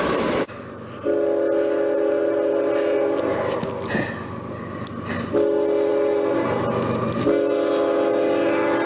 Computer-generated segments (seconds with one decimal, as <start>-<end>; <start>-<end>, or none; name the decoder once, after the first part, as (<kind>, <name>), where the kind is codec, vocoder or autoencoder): none